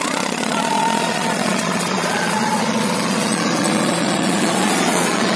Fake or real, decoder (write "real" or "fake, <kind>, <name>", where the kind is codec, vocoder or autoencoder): fake, vocoder, Vocos